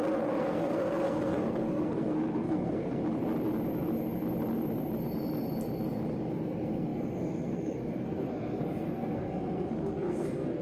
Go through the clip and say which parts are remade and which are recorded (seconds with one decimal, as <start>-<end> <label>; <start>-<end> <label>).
0.0-3.0 remade; 3.0-6.3 recorded; 6.3-10.6 remade